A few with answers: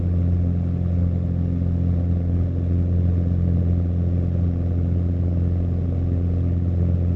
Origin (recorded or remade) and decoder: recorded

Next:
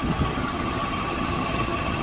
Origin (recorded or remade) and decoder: remade, vocoder, HiFi-GAN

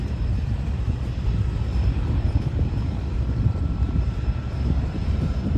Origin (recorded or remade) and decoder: remade, vocoder, BigVGAN v2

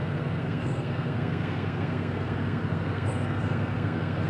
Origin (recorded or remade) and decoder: remade, codec, SNAC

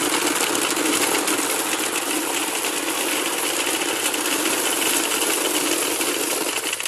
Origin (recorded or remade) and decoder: recorded